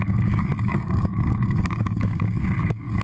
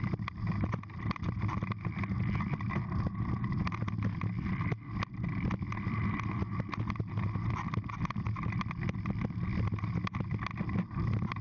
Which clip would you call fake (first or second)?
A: first